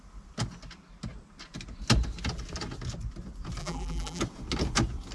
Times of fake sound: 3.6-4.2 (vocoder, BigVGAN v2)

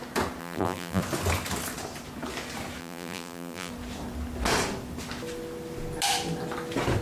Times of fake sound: 0.4-1.0 (vocoder, BigVGAN v2); 2.8-3.7

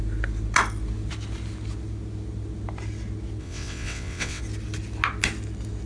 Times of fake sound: 3.4-4.4 (vocoder, WaveNeXt)

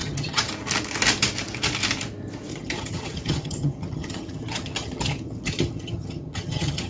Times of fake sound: 0.0-0.5 (vocoder, HiFi-GAN); 2.5-6.9

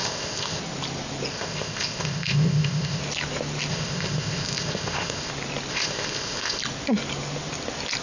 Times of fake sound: 0.0-0.6 (codec, ZipCodec); 1.3-3.0; 3.7-5.3; 5.7-6.6

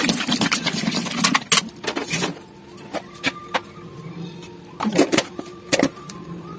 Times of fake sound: 4.9-6.6 (vocoder, BigVGAN v2)

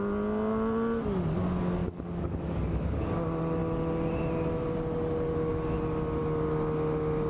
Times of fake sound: 1.8-3.0 (codec, DAC)